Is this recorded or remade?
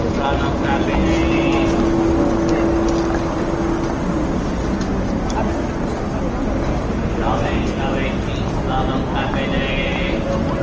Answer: recorded